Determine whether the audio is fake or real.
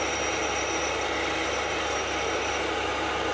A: real